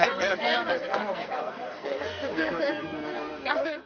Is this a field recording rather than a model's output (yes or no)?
no